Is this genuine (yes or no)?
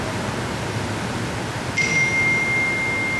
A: yes